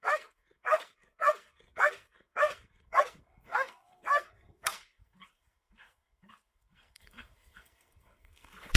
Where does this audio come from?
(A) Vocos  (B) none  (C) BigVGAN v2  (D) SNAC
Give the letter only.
D